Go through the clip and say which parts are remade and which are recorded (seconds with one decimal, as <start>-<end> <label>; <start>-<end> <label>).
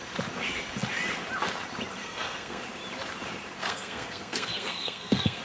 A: 0.0-2.0 recorded; 2.0-2.6 remade; 2.6-3.6 recorded; 3.6-5.4 remade